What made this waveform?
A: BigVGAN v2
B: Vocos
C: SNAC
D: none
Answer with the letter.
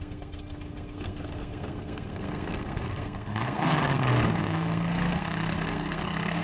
C